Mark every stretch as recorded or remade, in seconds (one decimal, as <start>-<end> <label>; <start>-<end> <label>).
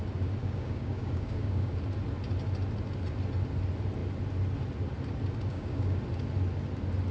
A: 0.0-0.4 recorded; 0.4-1.8 remade; 1.8-5.5 recorded; 5.5-6.0 remade; 6.0-7.1 recorded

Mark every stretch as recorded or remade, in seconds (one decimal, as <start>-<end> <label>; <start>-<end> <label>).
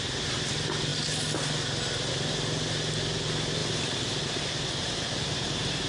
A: 0.0-5.9 recorded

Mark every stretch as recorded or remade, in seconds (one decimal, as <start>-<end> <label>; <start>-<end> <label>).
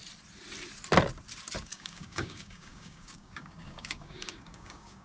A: 0.0-1.6 recorded; 1.6-5.0 remade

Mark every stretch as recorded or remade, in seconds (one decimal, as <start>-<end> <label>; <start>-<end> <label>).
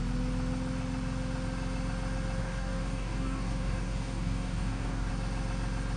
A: 0.0-2.4 recorded; 2.4-5.1 remade; 5.1-6.0 recorded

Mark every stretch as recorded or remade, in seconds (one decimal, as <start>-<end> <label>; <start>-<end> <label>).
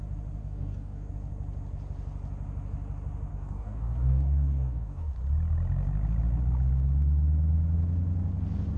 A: 0.0-0.4 recorded; 0.4-1.1 remade; 1.1-3.3 recorded; 3.3-5.1 remade; 5.1-8.8 recorded